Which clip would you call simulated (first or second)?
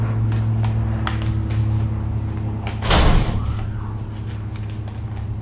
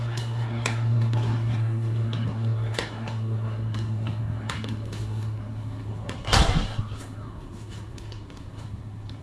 second